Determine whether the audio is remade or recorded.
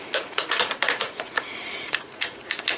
remade